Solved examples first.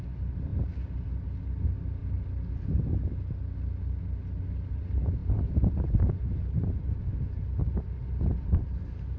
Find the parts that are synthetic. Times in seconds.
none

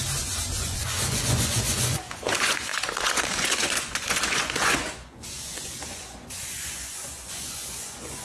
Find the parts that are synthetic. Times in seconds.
0.6-8.2 (vocoder, Vocos)

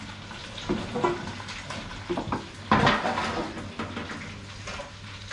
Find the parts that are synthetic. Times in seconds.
none

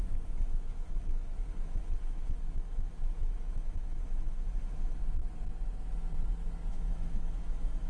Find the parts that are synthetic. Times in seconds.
0.0-5.0 (autoencoder, DAC-VAE); 6.7-7.9

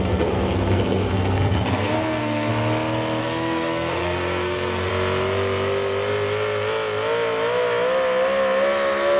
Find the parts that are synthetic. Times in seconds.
0.0-2.5 (codec, SNAC); 3.2-4.9

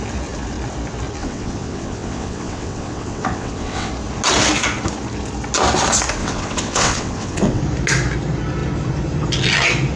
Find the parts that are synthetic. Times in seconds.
1.2-3.9 (vocoder, WaveNeXt); 6.2-7.6

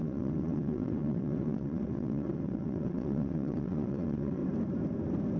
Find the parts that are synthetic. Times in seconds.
0.0-4.4 (vocoder, WaveNeXt)

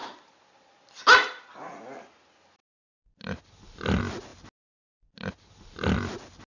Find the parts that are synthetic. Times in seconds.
none